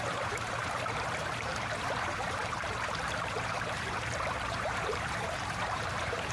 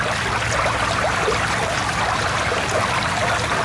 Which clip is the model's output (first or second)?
first